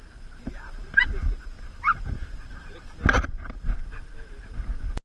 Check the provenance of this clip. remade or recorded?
recorded